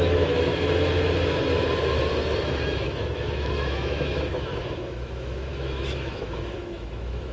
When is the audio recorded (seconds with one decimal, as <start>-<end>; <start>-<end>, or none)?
0.5-2.4